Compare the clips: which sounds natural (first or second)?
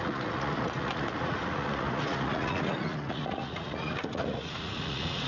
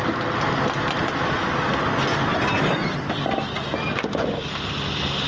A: second